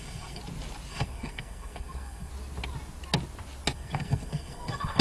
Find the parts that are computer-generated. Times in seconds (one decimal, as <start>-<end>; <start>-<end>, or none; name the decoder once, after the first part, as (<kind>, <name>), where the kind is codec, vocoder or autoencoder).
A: 0.0-0.4 (codec, SNAC); 0.9-2.3; 3.7-5.0